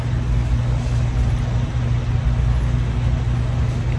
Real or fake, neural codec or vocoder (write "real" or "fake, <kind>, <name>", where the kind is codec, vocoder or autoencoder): real